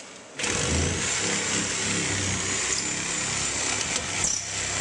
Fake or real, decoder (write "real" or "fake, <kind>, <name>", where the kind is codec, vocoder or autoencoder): real